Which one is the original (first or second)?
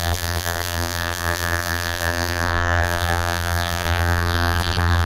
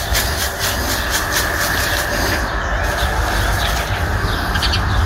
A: second